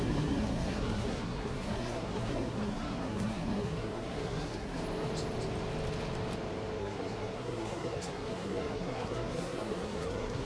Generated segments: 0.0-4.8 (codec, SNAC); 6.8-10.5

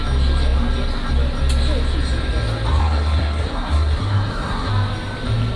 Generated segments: 2.8-4.7 (codec, SNAC)

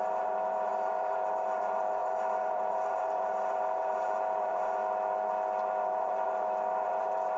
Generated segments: 0.0-4.8 (vocoder, BigVGAN v2); 5.8-7.4

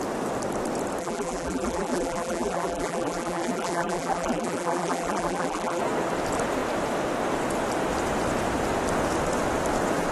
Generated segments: 1.0-5.8 (vocoder, BigVGAN v2)

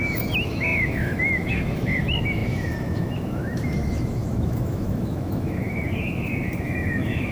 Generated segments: 0.0-7.3 (autoencoder, DAC-VAE)